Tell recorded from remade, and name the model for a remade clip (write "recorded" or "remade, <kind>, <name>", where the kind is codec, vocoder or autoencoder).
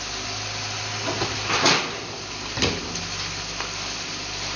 recorded